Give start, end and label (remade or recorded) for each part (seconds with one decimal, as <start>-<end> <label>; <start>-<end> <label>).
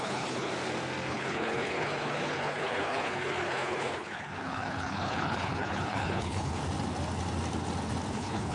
0.0-0.5 remade; 0.5-1.1 recorded; 1.1-6.6 remade; 6.6-8.1 recorded; 8.1-8.5 remade